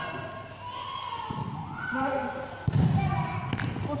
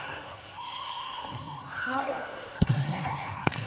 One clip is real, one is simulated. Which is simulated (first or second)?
second